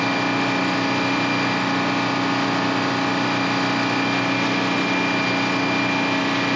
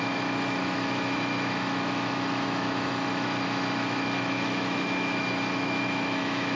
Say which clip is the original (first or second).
first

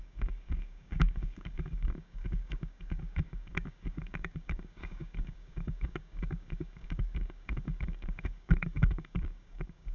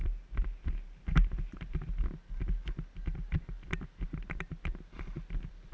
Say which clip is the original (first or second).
second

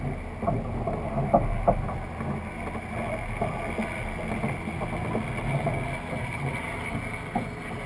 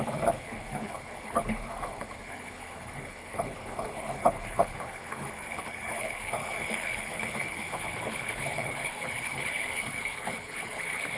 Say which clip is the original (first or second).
first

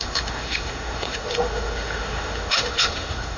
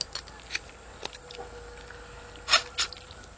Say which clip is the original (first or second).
second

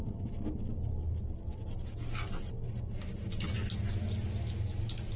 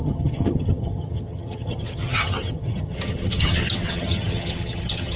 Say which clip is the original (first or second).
first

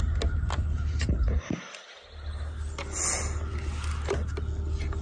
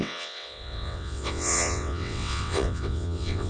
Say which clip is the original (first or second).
first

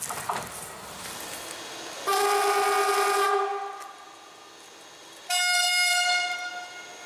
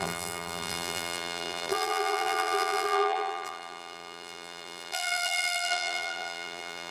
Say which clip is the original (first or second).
first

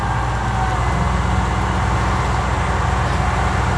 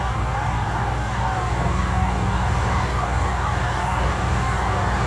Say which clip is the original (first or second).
first